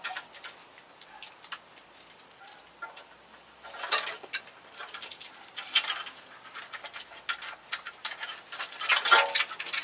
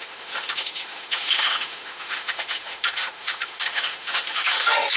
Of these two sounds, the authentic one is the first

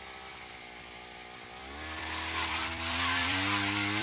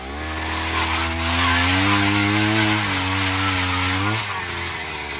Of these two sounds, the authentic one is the second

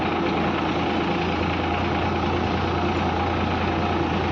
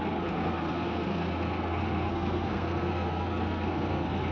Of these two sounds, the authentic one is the first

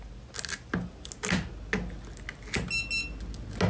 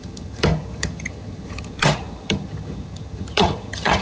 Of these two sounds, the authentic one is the first